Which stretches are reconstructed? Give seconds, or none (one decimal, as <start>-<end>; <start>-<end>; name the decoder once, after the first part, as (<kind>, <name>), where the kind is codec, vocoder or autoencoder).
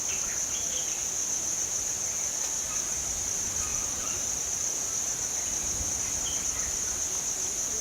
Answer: none